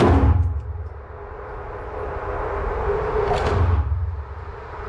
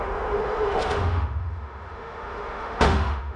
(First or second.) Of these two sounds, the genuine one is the first